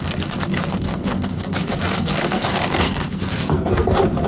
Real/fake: fake